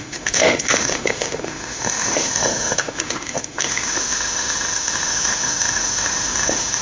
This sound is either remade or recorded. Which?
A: remade